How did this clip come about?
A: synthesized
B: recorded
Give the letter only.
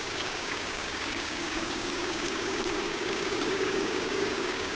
A